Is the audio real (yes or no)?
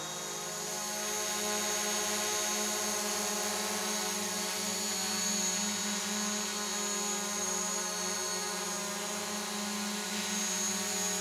yes